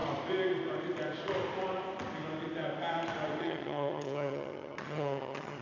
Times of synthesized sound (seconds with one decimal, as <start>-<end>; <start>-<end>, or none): 3.4-5.6